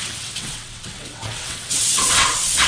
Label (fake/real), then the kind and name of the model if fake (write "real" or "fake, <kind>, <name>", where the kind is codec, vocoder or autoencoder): fake, vocoder, WaveNeXt